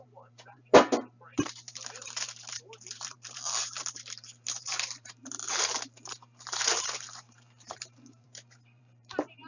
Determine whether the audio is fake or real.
fake